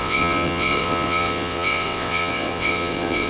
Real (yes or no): no